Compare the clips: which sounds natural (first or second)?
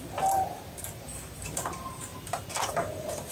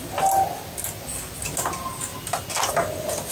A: second